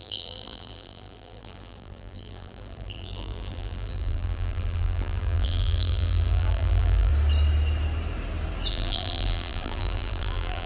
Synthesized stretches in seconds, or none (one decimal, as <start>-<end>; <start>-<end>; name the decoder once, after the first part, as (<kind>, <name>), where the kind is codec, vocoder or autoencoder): 0.0-7.1 (vocoder, BigVGAN v2); 8.7-10.7